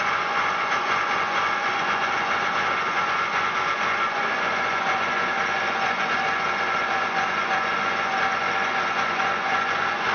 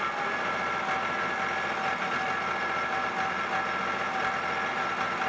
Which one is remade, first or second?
first